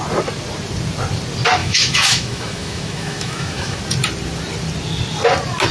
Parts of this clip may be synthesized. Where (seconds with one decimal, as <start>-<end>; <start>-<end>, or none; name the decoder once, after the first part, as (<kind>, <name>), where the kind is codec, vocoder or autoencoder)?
1.6-3.8 (autoencoder, DAC-VAE)